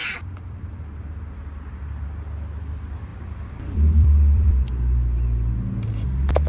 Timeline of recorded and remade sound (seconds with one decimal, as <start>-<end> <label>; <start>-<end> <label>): 0.0-0.9 remade; 0.9-3.1 recorded; 3.1-4.5 remade; 4.5-6.5 recorded